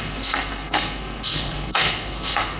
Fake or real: fake